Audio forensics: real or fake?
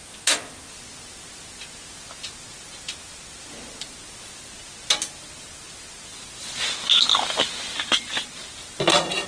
real